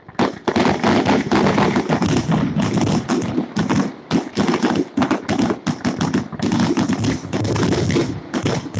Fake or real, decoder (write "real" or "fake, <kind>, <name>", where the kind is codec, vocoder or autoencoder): real